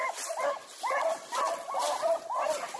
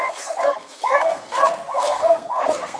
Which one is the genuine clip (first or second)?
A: first